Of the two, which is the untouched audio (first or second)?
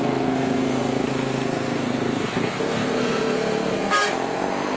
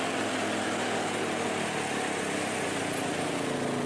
second